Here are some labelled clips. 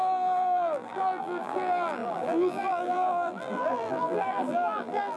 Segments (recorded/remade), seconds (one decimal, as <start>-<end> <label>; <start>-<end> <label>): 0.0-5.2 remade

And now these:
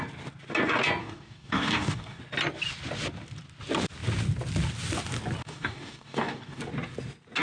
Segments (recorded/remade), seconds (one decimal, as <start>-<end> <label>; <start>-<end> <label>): 0.0-1.0 recorded; 1.0-2.2 remade; 2.2-5.4 recorded; 5.4-6.6 remade; 6.6-7.4 recorded

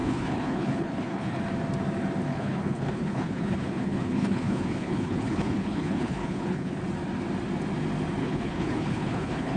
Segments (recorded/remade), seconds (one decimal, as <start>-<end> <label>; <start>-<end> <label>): 0.0-1.4 remade; 1.4-2.3 recorded; 2.3-6.8 remade; 6.8-8.2 recorded; 8.2-9.6 remade

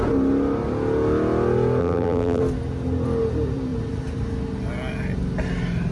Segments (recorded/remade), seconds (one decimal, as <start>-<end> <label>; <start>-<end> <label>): 0.0-1.8 recorded; 1.8-2.4 remade; 2.4-5.9 recorded

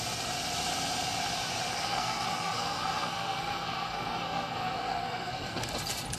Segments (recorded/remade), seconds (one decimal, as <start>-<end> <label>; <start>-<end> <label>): 0.0-1.9 recorded; 1.9-5.6 remade; 5.6-6.2 recorded